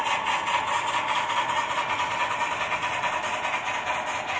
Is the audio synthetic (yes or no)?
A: no